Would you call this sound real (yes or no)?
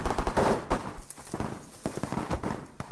yes